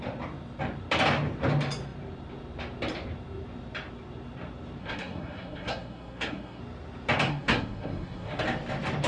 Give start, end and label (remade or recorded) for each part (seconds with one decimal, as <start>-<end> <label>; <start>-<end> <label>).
0.0-4.8 recorded; 4.8-6.6 remade; 6.6-7.3 recorded; 7.3-8.4 remade; 8.4-9.1 recorded